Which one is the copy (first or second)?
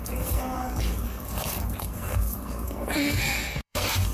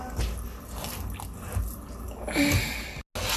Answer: first